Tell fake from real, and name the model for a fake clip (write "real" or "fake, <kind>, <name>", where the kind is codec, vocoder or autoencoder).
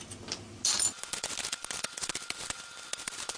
real